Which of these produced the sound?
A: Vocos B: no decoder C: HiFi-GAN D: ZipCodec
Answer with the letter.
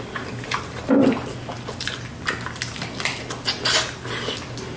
B